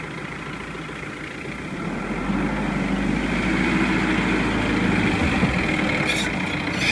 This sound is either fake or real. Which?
real